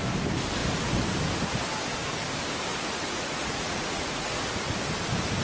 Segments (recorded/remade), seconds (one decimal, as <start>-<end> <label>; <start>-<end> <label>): 0.0-2.7 recorded; 2.7-4.4 remade; 4.4-5.4 recorded